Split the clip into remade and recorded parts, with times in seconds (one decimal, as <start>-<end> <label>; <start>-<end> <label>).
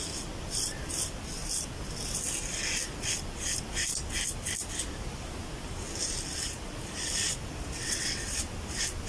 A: 0.0-7.8 recorded; 7.8-8.4 remade; 8.4-9.1 recorded